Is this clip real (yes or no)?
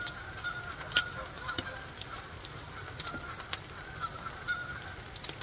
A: yes